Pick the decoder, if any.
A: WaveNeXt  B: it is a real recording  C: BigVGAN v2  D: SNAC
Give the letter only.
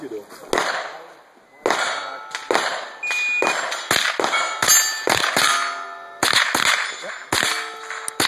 B